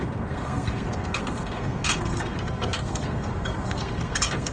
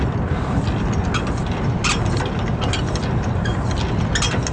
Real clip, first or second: second